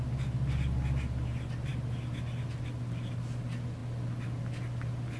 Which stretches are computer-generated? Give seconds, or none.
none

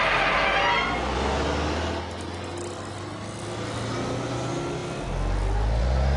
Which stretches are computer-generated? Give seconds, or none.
none